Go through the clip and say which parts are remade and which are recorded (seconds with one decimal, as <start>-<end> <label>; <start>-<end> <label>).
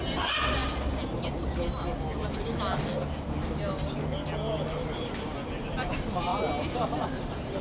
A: 0.0-0.6 remade; 0.6-4.5 recorded; 4.5-7.6 remade